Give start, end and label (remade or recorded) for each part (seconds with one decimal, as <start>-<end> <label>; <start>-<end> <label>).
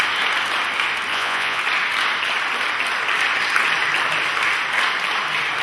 0.0-1.1 recorded; 1.1-1.6 remade; 1.6-5.6 recorded